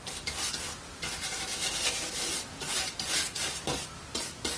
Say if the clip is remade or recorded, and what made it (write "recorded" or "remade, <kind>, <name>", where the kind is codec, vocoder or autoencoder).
recorded